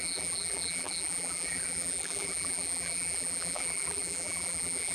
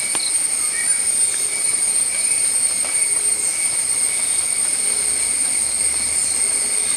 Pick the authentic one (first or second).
second